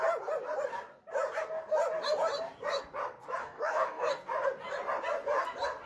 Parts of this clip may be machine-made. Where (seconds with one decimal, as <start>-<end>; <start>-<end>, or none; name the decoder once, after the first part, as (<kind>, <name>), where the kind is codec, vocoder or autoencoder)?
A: 3.4-4.1 (codec, DAC)